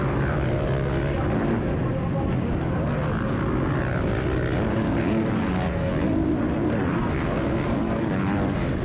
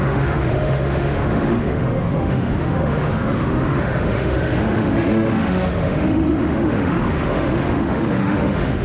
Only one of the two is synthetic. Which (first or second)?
second